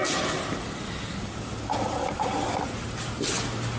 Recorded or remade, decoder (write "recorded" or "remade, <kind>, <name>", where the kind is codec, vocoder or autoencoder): recorded